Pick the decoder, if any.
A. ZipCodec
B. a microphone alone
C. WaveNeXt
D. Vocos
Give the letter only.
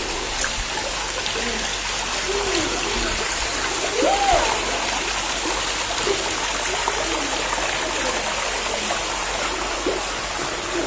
B